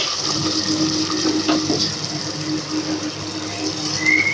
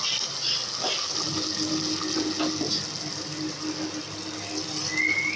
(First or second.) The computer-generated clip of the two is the first